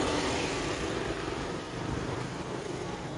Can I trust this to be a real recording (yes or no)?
yes